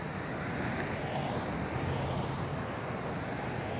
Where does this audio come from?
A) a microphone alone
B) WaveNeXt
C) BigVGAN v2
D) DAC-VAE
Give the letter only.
A